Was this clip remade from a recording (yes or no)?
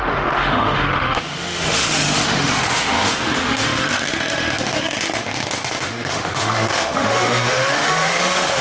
yes